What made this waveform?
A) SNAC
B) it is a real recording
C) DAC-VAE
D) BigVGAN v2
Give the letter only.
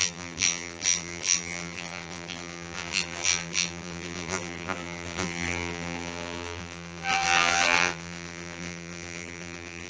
D